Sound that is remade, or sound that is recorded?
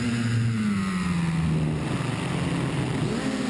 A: recorded